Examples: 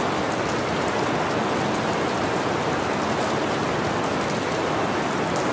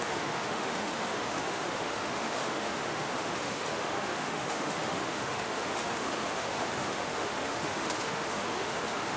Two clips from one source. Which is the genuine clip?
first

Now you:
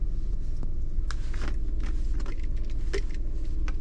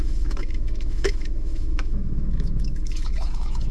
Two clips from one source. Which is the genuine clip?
first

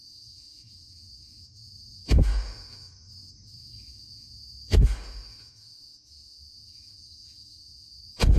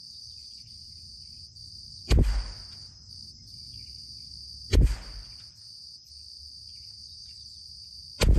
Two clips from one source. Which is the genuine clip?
second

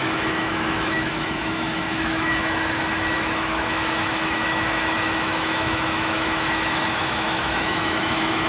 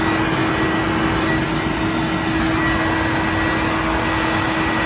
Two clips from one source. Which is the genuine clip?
second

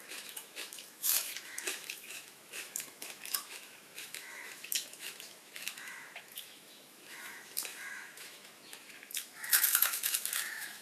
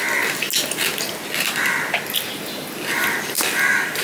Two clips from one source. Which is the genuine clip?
second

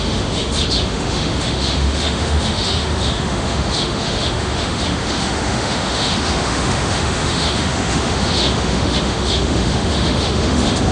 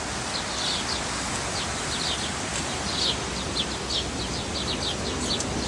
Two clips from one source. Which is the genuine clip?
second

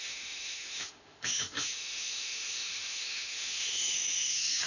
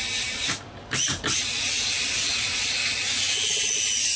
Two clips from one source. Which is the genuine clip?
second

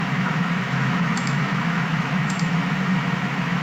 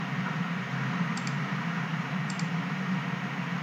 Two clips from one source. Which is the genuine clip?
second